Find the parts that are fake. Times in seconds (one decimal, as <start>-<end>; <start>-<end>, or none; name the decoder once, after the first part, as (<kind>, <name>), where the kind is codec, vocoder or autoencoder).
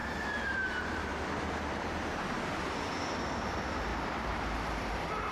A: 0.0-2.1 (vocoder, BigVGAN v2); 3.9-5.3